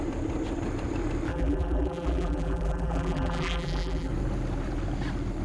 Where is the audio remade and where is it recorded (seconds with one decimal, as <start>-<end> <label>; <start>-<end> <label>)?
0.0-1.3 recorded; 1.3-4.1 remade; 4.1-5.4 recorded